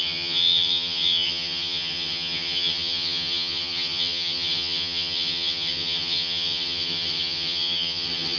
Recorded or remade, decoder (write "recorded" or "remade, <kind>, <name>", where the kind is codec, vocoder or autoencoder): remade, vocoder, HiFi-GAN